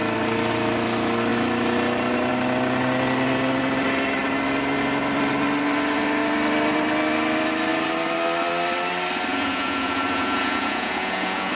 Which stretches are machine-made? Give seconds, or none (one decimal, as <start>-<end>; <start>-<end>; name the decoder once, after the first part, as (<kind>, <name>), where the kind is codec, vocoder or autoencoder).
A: 9.3-11.5 (vocoder, Vocos)